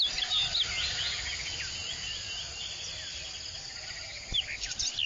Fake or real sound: real